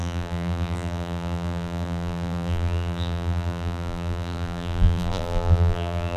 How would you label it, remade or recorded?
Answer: remade